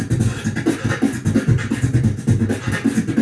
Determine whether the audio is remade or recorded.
recorded